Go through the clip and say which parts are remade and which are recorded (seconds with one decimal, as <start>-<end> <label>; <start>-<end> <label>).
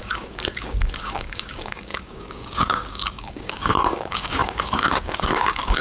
0.0-5.8 remade